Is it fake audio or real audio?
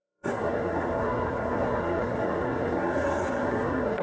fake